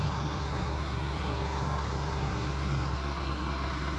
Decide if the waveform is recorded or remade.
remade